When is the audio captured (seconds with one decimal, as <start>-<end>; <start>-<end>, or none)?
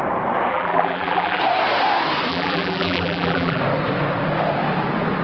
0.0-0.5; 1.4-2.3; 3.6-5.2